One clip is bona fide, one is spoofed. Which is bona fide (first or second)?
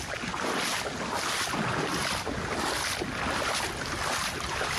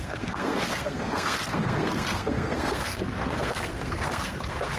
first